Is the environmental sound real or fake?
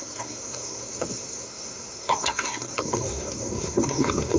fake